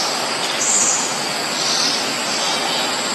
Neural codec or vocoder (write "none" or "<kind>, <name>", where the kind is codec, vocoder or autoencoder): none